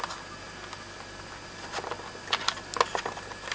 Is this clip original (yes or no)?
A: yes